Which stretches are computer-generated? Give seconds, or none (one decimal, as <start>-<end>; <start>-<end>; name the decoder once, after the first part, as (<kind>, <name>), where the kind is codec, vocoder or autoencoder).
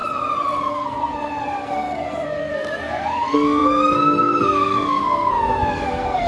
0.7-6.3 (codec, SNAC)